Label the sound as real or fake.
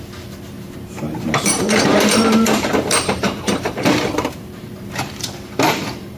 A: fake